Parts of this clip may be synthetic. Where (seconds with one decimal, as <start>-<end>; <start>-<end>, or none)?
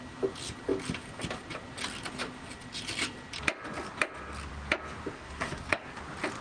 5.1-6.0